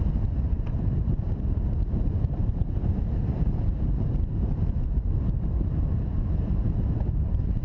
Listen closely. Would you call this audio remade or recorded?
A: remade